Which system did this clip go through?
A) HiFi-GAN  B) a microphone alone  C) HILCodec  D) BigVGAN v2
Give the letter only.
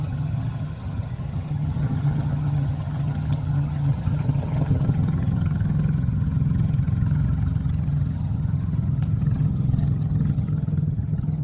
A